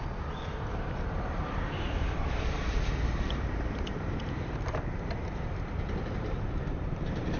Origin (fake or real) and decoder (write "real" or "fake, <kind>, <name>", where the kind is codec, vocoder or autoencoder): fake, vocoder, BigVGAN v2